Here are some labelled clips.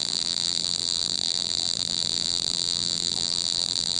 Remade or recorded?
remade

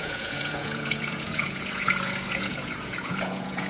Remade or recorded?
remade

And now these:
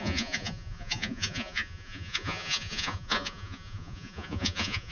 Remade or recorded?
remade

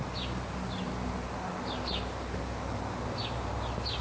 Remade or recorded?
recorded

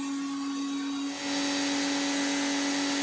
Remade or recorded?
recorded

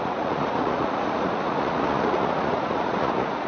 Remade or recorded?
remade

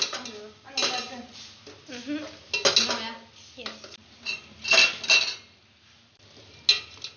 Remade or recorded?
recorded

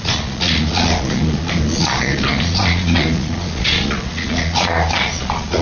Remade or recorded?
remade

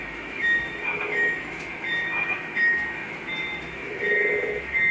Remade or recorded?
remade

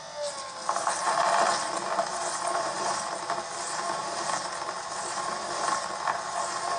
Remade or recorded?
recorded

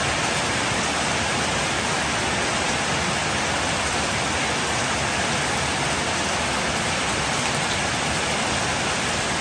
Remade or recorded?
recorded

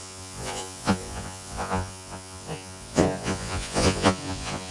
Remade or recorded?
remade